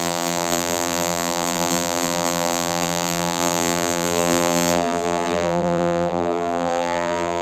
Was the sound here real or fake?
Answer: fake